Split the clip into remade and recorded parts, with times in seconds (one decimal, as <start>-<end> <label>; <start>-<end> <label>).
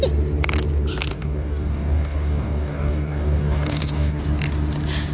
0.0-1.1 recorded; 1.1-4.2 remade; 4.2-5.1 recorded